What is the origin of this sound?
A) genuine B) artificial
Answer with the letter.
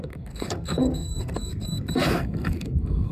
B